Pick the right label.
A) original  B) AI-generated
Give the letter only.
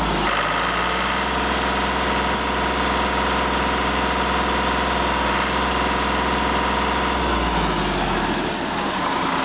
A